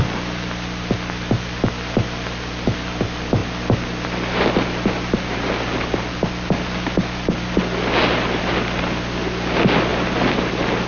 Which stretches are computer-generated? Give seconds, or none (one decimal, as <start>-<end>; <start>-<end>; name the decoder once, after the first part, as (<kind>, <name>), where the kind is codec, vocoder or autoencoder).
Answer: none